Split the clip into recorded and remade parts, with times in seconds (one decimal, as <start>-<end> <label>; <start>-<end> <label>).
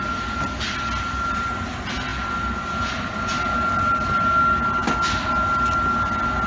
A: 0.0-6.5 recorded